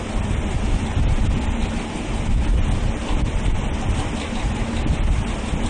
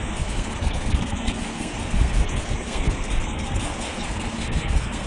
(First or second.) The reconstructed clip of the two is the second